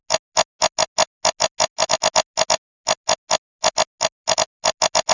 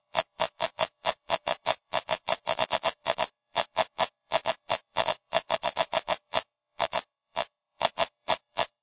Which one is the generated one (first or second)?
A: second